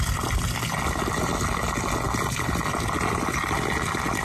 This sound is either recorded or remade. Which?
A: recorded